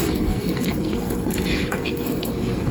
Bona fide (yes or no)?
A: no